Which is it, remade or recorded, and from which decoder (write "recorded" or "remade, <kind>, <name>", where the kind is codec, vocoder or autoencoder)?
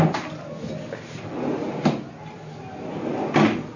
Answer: recorded